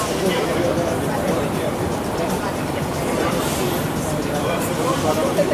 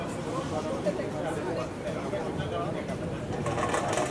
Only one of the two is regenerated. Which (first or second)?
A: first